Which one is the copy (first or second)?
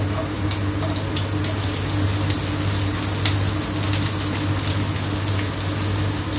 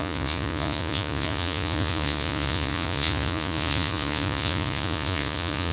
second